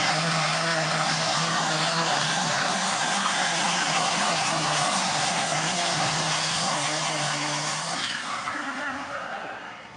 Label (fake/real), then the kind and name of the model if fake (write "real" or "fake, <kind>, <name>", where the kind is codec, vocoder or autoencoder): fake, codec, SNAC